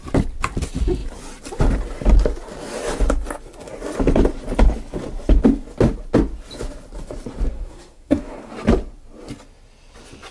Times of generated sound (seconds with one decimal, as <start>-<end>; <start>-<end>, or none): 7.5-8.5